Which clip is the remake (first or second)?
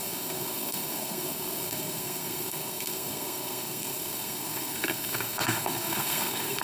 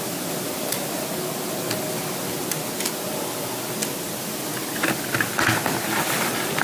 first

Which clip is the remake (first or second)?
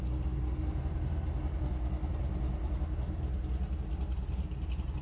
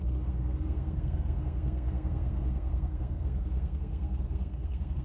second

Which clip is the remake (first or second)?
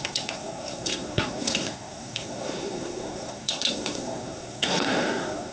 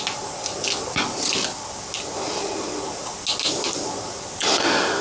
first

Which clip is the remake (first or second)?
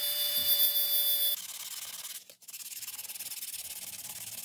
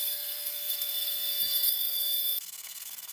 second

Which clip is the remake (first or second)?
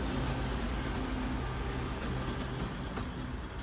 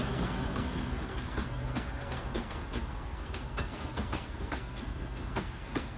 second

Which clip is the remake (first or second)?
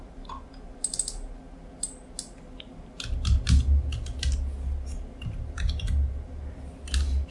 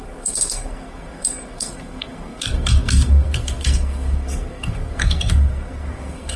second